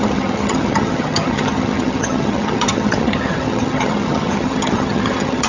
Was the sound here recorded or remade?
remade